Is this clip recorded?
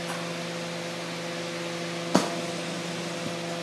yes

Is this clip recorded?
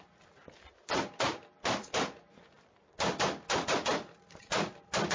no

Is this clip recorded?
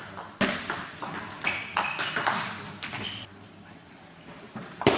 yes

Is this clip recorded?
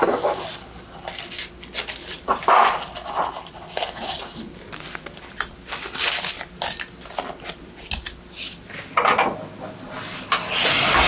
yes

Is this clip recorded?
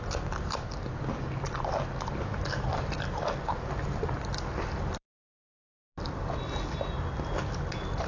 yes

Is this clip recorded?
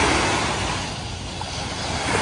yes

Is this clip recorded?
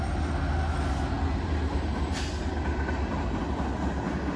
yes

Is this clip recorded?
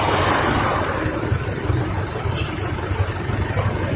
no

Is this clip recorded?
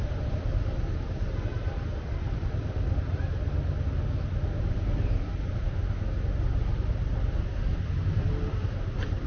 yes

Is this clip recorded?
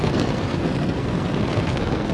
no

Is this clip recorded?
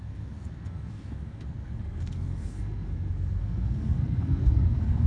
no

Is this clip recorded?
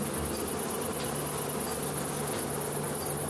yes